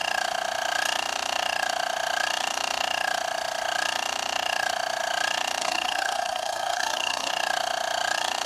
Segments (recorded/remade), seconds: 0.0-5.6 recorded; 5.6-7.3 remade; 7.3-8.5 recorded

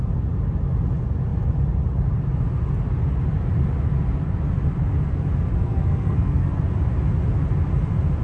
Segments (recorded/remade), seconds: 0.0-5.5 recorded; 5.5-6.6 remade; 6.6-8.2 recorded